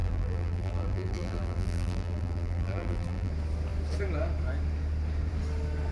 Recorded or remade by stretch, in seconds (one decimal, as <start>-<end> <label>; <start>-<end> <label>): 0.0-3.3 remade; 3.3-5.9 recorded